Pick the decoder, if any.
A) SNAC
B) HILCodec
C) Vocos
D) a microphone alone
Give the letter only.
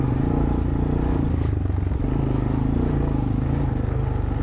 D